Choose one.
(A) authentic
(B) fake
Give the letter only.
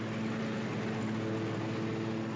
A